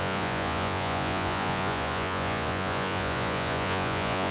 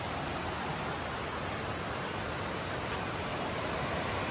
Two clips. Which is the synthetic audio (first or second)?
first